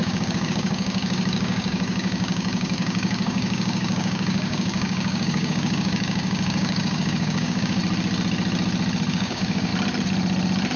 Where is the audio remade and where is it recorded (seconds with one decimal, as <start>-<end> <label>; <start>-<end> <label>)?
0.0-7.8 remade; 7.8-9.1 recorded; 9.1-9.7 remade; 9.7-10.8 recorded